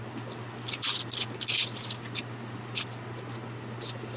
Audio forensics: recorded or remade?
recorded